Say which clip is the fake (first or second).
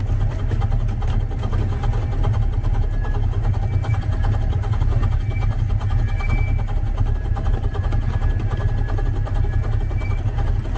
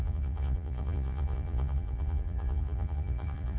second